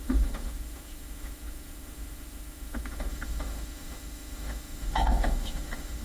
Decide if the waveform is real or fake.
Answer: fake